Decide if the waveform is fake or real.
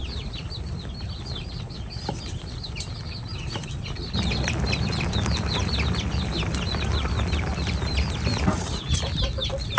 fake